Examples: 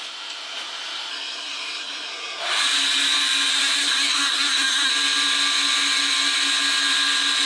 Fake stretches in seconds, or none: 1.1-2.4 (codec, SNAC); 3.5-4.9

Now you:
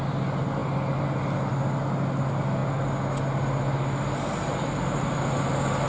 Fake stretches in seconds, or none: none

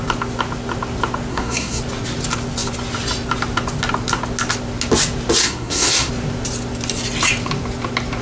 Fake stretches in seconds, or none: 1.3-1.8 (codec, SNAC); 5.4-6.1

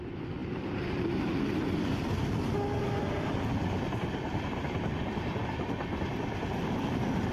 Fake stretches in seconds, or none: none

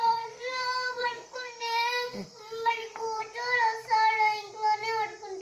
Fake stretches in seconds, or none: 0.0-3.2 (codec, SNAC)